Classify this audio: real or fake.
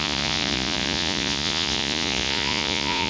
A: fake